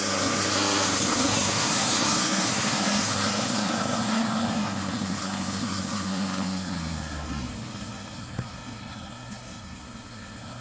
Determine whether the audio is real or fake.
fake